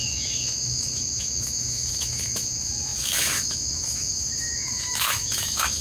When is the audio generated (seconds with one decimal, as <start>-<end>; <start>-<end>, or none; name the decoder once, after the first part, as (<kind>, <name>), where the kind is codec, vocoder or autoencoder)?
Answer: 0.0-5.8 (autoencoder, DAC-VAE)